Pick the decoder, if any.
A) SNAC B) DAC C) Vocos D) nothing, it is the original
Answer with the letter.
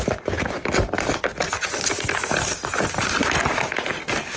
D